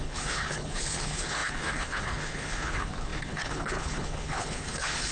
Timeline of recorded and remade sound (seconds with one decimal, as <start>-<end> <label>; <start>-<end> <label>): 0.0-5.1 remade